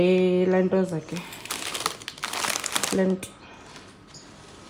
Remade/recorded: recorded